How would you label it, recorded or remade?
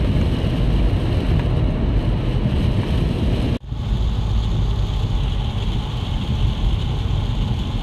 recorded